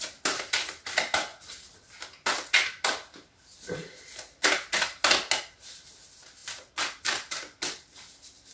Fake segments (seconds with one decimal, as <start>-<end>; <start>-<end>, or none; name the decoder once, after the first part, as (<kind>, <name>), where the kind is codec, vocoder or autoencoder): none